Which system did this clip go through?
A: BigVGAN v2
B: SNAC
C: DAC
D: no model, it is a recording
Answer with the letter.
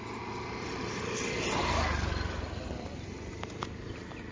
D